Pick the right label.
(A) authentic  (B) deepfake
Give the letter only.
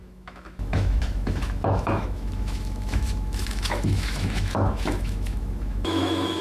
B